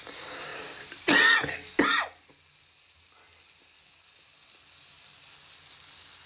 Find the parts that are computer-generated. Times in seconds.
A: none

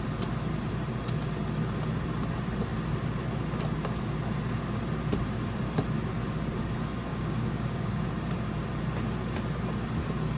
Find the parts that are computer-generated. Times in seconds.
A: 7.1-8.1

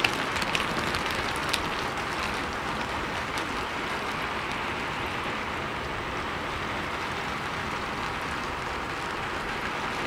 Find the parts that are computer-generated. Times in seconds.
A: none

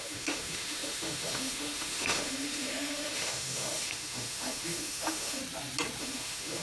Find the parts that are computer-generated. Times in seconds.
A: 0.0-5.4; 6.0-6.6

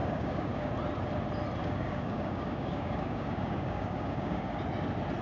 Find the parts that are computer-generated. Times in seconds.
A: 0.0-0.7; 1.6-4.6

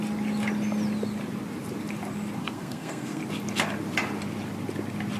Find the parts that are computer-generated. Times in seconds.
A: 2.4-3.2